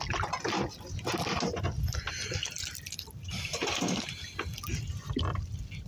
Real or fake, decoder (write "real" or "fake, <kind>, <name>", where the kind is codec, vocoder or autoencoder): real